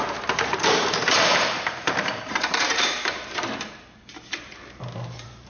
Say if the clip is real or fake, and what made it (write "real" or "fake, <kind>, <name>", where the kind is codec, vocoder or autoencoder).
fake, vocoder, BigVGAN v2